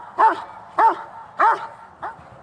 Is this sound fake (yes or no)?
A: no